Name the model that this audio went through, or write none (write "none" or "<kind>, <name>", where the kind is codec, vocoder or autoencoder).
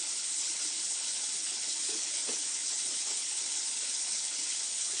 codec, HILCodec